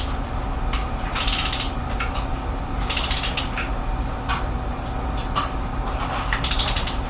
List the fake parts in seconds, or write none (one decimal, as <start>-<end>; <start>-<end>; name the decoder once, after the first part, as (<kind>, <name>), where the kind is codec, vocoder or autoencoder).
0.8-1.3 (vocoder, BigVGAN v2)